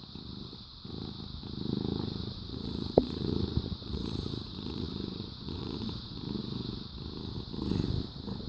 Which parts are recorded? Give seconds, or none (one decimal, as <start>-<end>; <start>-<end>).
0.0-1.9; 6.2-8.5